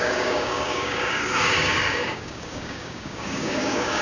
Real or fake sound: fake